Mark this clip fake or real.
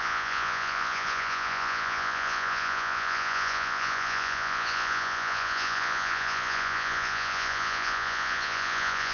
fake